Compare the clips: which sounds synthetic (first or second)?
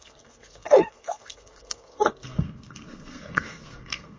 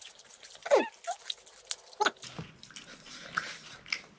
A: first